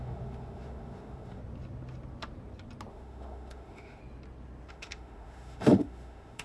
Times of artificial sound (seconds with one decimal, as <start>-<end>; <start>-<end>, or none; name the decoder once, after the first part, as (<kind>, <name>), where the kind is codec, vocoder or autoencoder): 0.0-1.4 (autoencoder, DAC-VAE); 2.9-4.0; 4.7-6.4